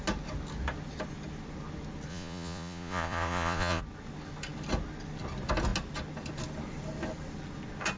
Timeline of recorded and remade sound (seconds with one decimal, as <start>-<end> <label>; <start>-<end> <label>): 0.0-2.1 recorded; 2.1-3.8 remade; 3.8-8.0 recorded